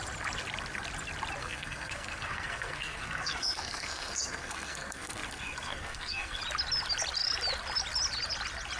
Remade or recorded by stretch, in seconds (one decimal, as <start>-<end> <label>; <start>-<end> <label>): 0.0-1.4 recorded; 1.4-6.4 remade; 6.4-8.8 recorded